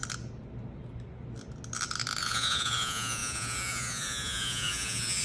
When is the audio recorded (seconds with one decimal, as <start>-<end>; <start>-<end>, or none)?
0.0-2.2